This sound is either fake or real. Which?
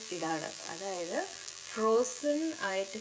fake